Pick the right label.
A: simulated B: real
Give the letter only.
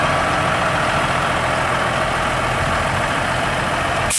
B